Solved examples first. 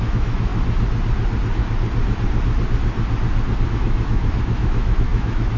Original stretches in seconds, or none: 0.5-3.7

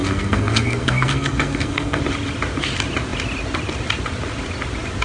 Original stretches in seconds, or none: 2.0-5.0

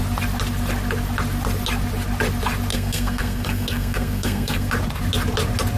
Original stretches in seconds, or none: 0.0-2.7; 4.7-5.8

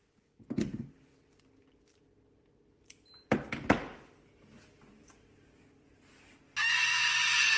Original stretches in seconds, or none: 0.0-1.6; 5.6-7.0

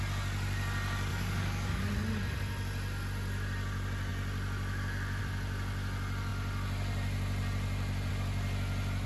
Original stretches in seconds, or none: 0.0-1.1; 1.8-9.1

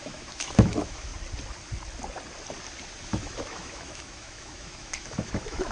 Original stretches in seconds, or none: 1.1-3.0

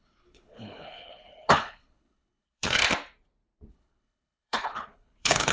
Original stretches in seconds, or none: 2.8-3.7